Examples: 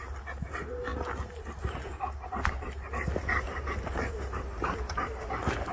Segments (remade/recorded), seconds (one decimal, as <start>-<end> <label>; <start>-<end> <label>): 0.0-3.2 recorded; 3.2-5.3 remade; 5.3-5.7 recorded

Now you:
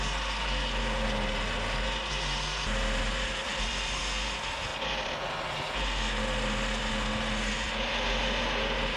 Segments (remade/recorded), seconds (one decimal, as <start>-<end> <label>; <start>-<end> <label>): 0.0-3.5 recorded; 3.5-4.0 remade; 4.0-9.0 recorded

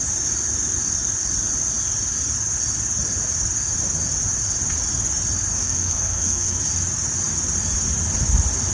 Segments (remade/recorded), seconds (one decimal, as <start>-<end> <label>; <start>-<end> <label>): 0.0-5.5 recorded; 5.5-6.6 remade; 6.6-8.7 recorded